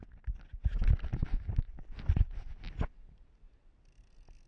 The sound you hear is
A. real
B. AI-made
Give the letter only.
A